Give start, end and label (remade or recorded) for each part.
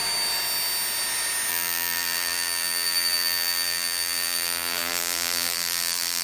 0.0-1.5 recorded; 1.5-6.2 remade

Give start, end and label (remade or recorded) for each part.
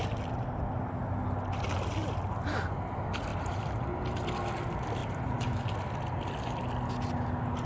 0.0-2.0 recorded; 2.0-2.7 remade; 2.7-3.3 recorded; 3.3-4.0 remade; 4.0-5.0 recorded; 5.0-5.6 remade; 5.6-7.7 recorded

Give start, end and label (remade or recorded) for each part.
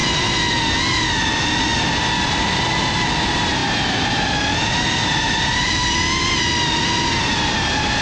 0.0-5.0 recorded; 5.0-5.8 remade; 5.8-8.0 recorded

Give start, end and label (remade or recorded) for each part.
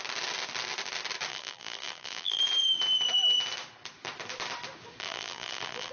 0.0-1.3 recorded; 1.3-2.4 remade; 2.4-5.0 recorded; 5.0-5.9 remade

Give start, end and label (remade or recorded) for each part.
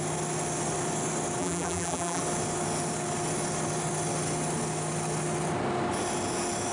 0.0-1.4 recorded; 1.4-2.2 remade; 2.2-6.7 recorded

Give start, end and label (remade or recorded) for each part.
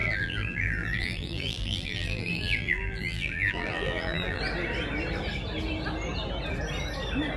0.0-4.4 remade; 4.4-7.4 recorded